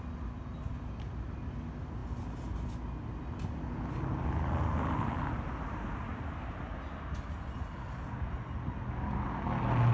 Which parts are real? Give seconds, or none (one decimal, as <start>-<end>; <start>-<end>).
0.0-9.9